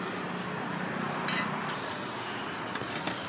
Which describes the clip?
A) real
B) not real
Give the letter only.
A